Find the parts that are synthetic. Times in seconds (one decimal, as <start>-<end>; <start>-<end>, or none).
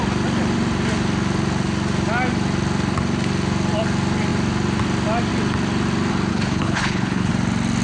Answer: 6.3-7.3